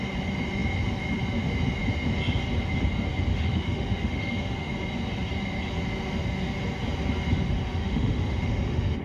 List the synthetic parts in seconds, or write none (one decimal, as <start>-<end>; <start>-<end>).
3.3-4.7; 7.7-9.0